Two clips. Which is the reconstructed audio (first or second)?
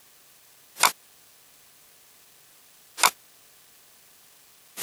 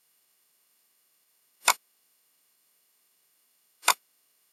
second